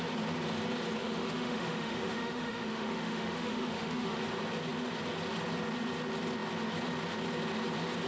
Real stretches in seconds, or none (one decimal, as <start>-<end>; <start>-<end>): 0.0-1.0; 4.2-8.1